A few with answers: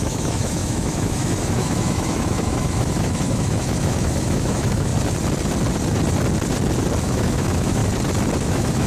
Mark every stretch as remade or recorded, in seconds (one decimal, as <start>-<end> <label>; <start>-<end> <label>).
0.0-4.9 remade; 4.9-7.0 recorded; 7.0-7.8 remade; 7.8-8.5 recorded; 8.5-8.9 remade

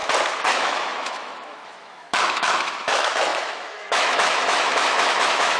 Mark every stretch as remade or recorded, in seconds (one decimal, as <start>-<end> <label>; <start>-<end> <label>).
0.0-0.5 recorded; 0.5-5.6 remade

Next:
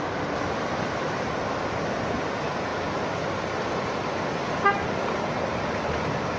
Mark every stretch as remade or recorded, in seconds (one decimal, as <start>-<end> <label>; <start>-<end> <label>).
0.0-6.4 recorded

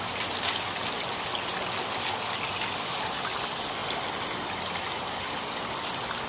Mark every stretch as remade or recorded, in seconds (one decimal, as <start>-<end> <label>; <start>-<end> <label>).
0.0-6.3 recorded